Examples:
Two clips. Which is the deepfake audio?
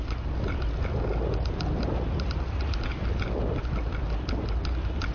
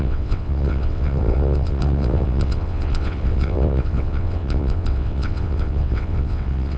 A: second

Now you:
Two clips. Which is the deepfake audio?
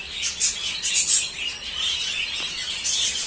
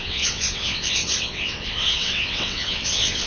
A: second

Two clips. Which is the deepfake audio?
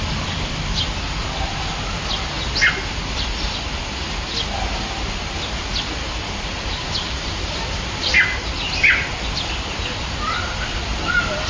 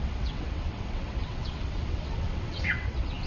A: second